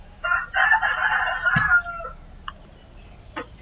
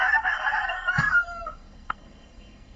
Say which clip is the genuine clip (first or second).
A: first